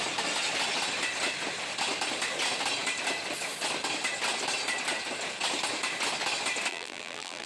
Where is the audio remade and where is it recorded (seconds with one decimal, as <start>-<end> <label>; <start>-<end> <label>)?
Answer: 0.0-6.7 recorded; 6.7-7.5 remade